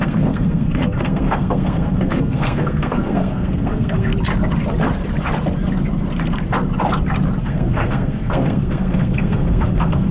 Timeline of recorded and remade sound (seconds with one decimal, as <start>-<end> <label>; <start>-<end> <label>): 0.0-4.1 remade; 4.1-7.4 recorded; 7.4-10.1 remade